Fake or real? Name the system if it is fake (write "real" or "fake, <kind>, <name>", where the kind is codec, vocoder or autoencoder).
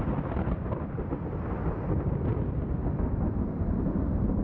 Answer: real